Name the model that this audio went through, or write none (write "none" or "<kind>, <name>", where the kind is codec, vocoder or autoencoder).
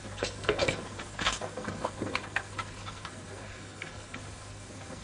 codec, SNAC